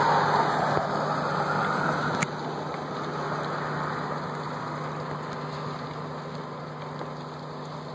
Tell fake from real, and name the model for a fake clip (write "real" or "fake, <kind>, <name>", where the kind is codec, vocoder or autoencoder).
real